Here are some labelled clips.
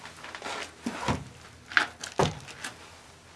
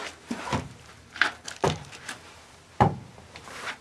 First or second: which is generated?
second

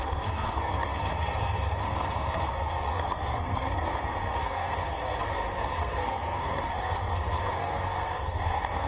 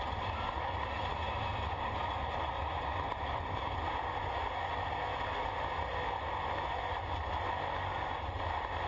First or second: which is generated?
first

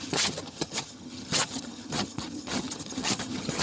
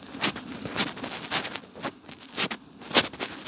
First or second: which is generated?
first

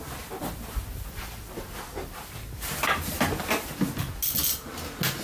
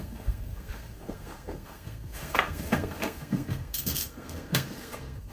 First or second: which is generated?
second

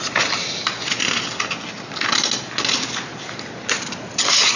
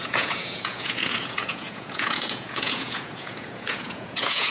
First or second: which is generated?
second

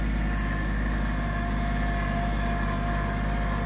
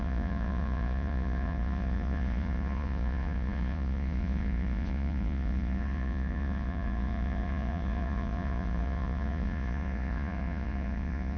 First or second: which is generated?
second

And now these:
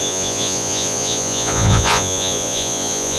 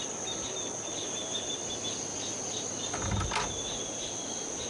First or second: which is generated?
first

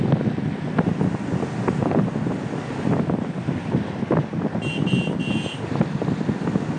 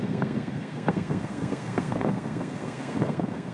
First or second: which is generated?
second